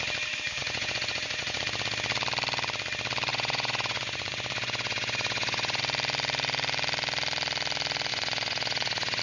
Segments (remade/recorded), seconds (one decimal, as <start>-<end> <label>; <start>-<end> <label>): 0.0-0.6 recorded; 0.6-1.6 remade; 1.6-3.3 recorded; 3.3-5.8 remade; 5.8-8.1 recorded; 8.1-9.2 remade